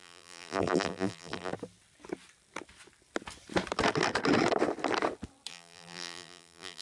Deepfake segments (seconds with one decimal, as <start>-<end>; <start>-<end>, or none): 0.0-1.5; 5.5-6.8